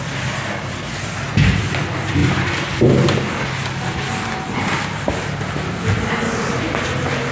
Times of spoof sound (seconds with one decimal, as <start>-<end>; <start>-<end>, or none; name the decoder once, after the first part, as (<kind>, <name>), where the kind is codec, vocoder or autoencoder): none